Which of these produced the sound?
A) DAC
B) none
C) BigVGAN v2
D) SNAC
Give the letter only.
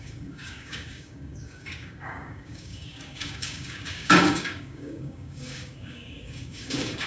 A